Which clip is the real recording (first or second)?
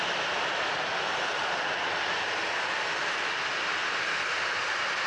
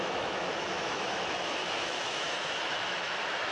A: first